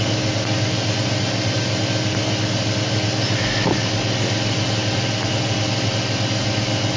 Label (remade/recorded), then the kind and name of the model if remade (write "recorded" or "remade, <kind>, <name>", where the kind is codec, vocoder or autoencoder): recorded